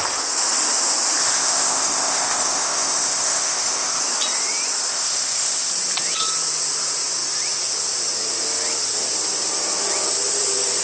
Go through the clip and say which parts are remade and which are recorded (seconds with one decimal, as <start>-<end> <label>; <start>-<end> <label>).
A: 0.0-1.2 recorded; 1.2-4.0 remade; 4.0-4.9 recorded; 4.9-5.7 remade; 5.7-10.8 recorded